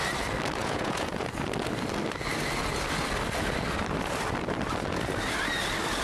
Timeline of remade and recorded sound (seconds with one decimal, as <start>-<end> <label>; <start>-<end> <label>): 0.0-0.6 recorded; 0.6-1.1 remade; 1.1-6.0 recorded